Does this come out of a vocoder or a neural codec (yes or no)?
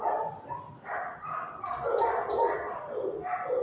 no